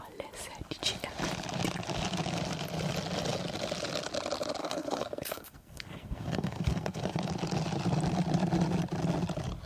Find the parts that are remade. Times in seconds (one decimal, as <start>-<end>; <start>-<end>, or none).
4.6-7.3

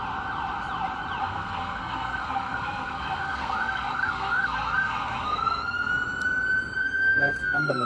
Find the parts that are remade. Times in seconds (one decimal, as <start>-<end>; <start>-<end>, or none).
1.2-5.9; 6.8-7.9

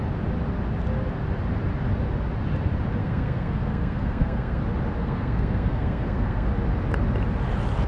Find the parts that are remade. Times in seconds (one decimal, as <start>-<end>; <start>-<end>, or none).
3.0-4.6; 5.0-6.5

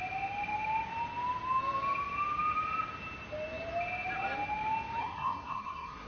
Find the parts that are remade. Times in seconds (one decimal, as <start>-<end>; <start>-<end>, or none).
5.0-6.1